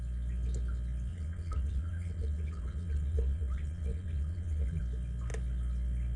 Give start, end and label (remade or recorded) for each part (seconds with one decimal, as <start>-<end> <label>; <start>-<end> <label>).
0.0-1.1 recorded; 1.1-4.8 remade; 4.8-6.2 recorded